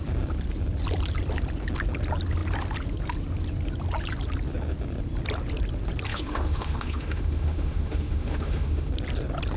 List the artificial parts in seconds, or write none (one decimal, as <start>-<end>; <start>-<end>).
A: 6.1-8.9